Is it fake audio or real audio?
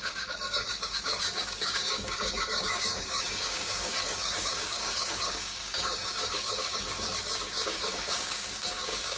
fake